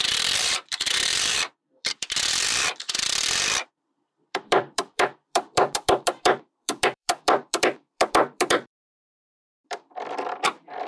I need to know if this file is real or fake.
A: fake